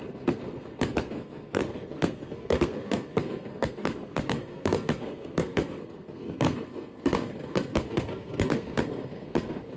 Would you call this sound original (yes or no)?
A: no